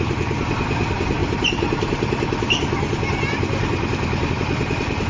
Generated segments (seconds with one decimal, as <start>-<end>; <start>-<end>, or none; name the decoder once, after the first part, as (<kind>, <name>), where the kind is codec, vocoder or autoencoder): none